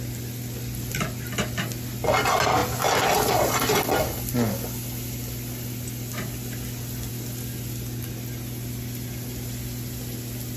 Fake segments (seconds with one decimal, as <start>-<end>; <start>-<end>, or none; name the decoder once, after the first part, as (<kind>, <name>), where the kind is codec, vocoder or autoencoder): none